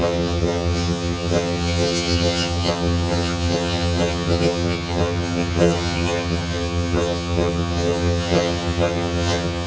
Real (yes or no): no